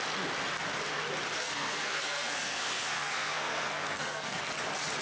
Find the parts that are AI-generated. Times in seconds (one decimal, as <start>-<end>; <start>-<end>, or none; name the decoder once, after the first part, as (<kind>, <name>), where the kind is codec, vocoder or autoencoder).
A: 1.4-4.4 (codec, SNAC)